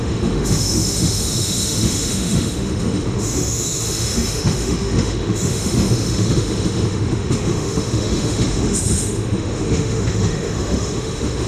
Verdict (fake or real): fake